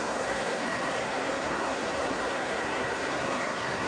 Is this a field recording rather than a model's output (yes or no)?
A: no